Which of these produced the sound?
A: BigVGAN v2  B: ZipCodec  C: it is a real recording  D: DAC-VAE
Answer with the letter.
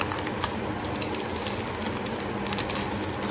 C